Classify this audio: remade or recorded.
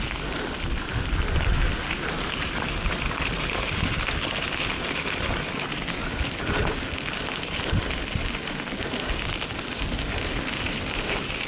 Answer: recorded